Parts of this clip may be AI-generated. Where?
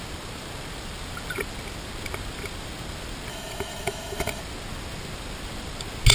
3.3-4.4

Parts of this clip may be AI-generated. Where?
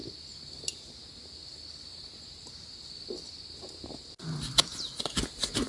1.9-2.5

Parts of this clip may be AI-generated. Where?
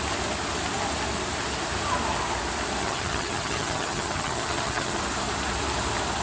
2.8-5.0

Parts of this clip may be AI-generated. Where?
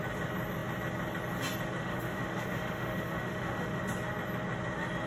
1.8-3.8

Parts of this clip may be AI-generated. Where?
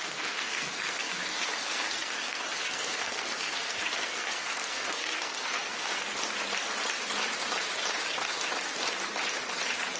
0.0-6.1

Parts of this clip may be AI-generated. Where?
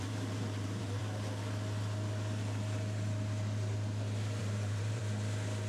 0.0-1.0; 4.4-5.0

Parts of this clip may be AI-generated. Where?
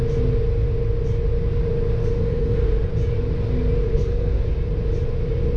2.0-2.9; 3.8-4.4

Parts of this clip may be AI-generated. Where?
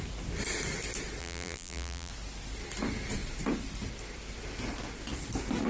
1.2-2.1